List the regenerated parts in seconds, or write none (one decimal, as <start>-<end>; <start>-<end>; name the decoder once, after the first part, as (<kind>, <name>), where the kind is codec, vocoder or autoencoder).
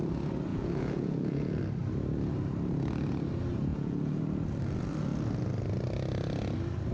0.5-1.6 (vocoder, Vocos); 3.7-4.2